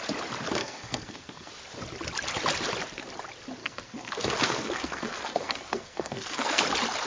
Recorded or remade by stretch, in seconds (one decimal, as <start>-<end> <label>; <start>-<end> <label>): 0.0-0.6 recorded; 0.6-1.5 remade; 1.5-3.6 recorded; 3.6-6.6 remade; 6.6-7.1 recorded

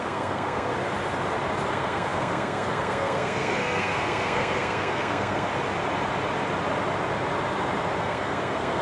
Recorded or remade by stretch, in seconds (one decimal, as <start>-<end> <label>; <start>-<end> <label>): 0.0-0.7 remade; 0.7-1.7 recorded; 1.7-5.5 remade; 5.5-8.0 recorded; 8.0-8.8 remade

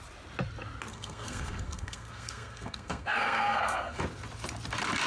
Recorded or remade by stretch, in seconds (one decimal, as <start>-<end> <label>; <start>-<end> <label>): 0.0-0.9 recorded; 0.9-4.0 remade; 4.0-5.1 recorded

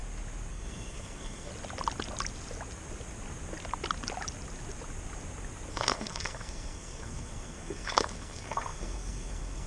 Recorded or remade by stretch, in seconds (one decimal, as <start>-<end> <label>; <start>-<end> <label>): 0.0-0.5 recorded; 0.5-1.5 remade; 1.5-5.7 recorded; 5.7-9.7 remade

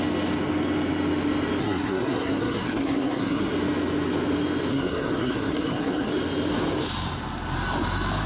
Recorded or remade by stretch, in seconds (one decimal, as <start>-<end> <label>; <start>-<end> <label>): 0.0-1.6 recorded; 1.6-3.5 remade; 3.5-4.7 recorded; 4.7-6.1 remade; 6.1-8.3 recorded

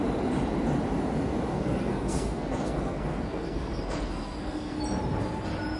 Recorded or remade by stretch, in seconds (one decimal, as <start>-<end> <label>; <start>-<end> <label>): 0.0-1.5 recorded; 1.5-4.8 remade; 4.8-5.8 recorded

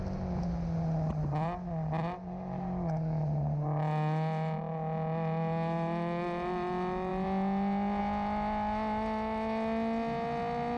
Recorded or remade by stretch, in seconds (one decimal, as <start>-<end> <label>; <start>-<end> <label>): 0.0-10.8 recorded

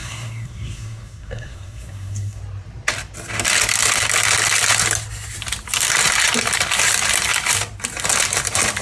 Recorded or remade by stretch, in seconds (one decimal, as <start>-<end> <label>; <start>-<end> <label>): 0.0-2.4 remade; 2.4-8.8 recorded